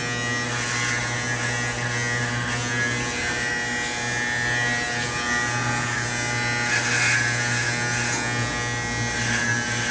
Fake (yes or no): no